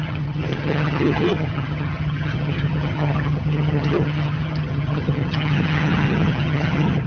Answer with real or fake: fake